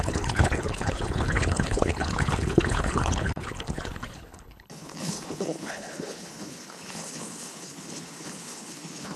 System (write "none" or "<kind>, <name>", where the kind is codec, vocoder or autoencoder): codec, HILCodec